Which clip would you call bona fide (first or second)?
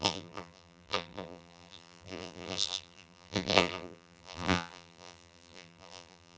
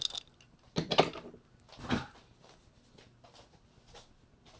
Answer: second